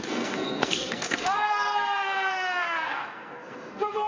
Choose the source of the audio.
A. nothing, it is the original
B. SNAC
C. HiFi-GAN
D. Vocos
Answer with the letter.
B